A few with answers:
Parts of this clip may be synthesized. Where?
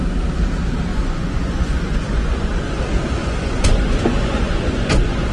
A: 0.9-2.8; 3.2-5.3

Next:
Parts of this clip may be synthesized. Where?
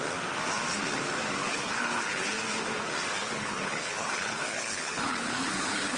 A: 1.4-2.3; 3.2-6.0